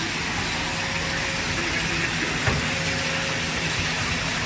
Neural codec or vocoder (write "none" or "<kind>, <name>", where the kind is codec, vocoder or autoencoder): none